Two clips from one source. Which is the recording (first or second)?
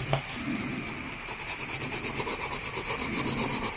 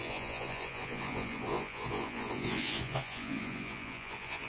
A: first